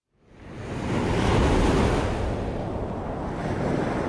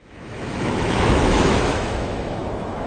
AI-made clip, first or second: second